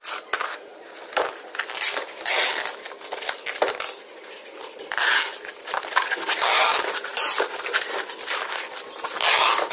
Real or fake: real